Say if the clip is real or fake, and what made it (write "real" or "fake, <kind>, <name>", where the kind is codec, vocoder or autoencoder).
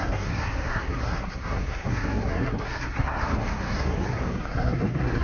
fake, codec, SNAC